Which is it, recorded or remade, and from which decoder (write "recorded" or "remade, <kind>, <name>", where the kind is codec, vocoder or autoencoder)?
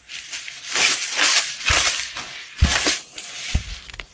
recorded